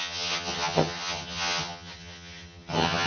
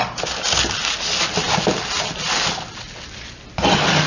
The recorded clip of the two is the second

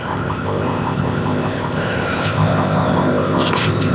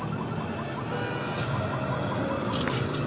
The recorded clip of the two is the second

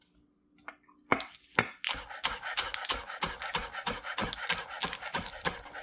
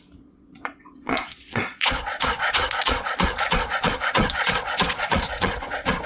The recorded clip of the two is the first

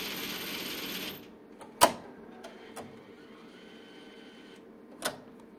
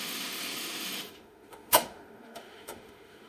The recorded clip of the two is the first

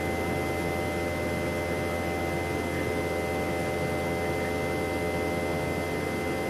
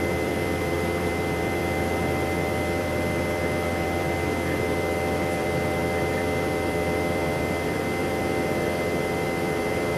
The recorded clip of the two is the first